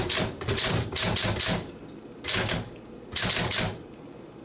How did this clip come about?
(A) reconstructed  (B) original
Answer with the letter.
A